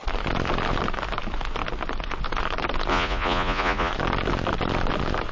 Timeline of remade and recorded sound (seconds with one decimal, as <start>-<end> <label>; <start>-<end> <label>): 0.0-2.9 recorded; 2.9-3.9 remade; 3.9-5.3 recorded